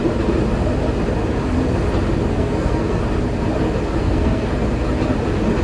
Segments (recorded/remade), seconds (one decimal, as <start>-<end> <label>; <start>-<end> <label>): 0.0-2.3 recorded; 2.3-3.0 remade; 3.0-4.0 recorded; 4.0-4.5 remade; 4.5-5.6 recorded